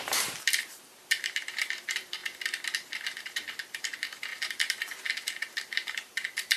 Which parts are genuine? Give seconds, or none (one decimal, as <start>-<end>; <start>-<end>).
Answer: 2.2-3.2